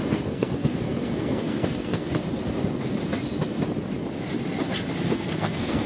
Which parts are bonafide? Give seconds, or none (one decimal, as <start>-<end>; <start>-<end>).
2.2-5.1